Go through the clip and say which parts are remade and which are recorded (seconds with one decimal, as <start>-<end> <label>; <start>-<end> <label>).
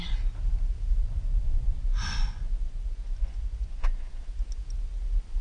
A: 0.0-1.0 recorded; 1.0-4.2 remade; 4.2-5.4 recorded